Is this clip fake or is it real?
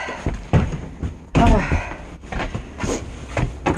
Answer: real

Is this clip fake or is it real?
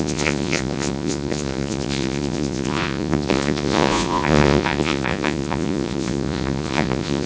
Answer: fake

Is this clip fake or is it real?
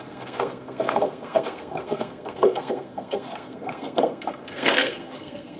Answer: fake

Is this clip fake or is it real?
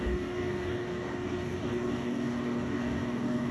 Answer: fake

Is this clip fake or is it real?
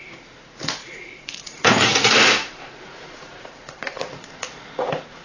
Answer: fake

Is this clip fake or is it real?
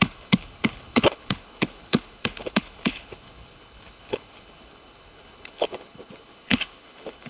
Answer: fake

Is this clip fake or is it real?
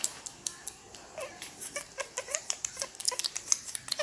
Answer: fake